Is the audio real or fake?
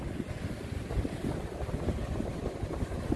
real